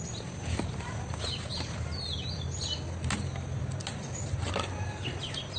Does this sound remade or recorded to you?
recorded